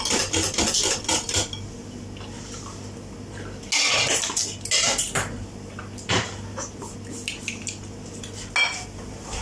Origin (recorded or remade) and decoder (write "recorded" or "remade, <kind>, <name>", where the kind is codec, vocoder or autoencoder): recorded